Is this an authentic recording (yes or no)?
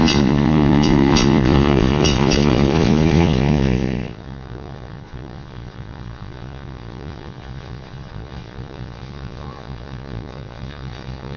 no